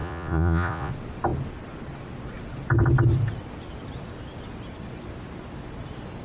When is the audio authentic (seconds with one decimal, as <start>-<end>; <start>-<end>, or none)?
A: 0.9-6.2